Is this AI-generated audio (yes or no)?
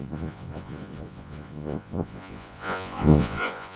yes